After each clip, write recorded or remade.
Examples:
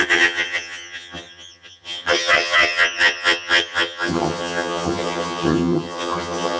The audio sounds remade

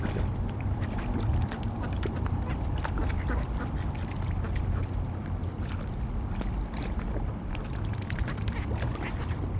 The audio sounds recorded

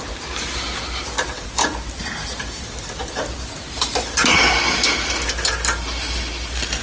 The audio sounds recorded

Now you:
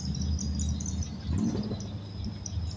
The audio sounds recorded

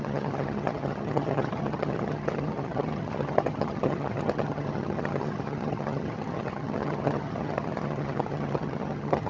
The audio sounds remade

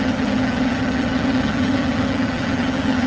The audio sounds remade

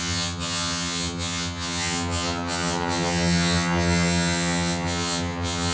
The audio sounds remade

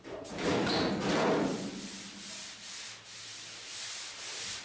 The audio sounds recorded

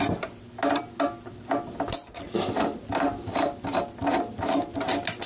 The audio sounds recorded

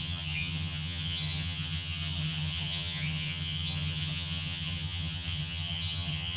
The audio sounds remade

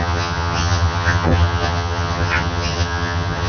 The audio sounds remade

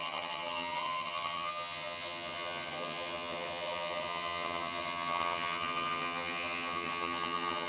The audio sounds remade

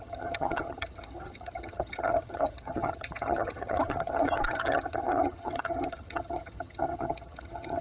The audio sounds remade